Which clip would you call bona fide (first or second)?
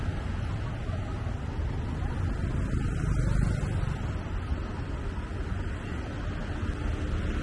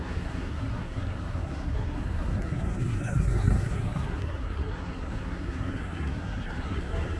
first